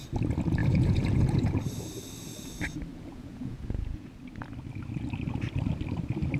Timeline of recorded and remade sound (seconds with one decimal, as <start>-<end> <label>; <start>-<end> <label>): 0.0-0.6 recorded; 0.6-1.6 remade; 1.6-2.9 recorded; 2.9-4.1 remade; 4.1-6.4 recorded

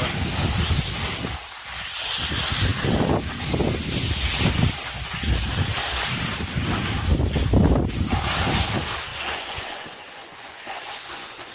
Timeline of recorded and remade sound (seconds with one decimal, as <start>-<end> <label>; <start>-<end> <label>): 0.0-9.1 recorded; 9.1-11.5 remade

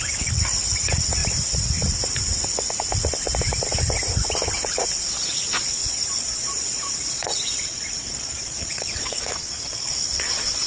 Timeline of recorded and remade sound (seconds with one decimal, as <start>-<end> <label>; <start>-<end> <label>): 0.0-5.8 recorded; 5.8-10.7 remade

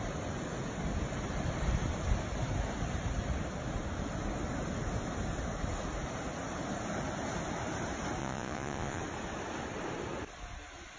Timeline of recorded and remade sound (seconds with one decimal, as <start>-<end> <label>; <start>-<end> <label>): 0.0-8.2 recorded; 8.2-9.0 remade; 9.0-11.0 recorded

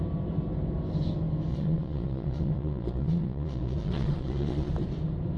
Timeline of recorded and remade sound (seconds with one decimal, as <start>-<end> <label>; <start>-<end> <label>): 0.0-1.5 recorded; 1.5-4.7 remade; 4.7-5.4 recorded

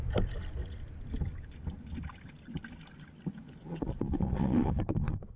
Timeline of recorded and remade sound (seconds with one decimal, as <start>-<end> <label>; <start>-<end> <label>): 0.0-3.6 recorded; 3.6-5.4 remade